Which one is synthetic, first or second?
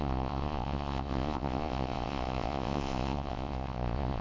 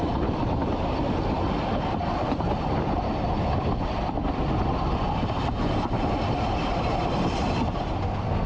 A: first